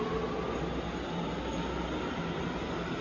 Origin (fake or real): real